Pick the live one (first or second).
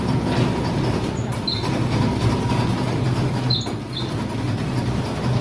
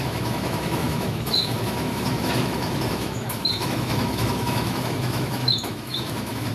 first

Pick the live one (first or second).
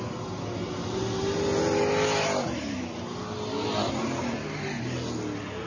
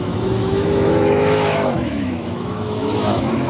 first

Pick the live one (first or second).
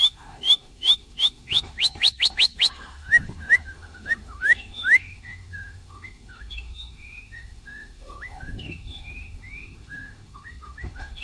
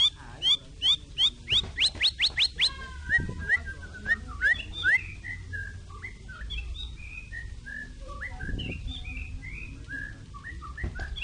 second